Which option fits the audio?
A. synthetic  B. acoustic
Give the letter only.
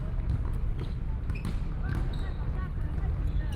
B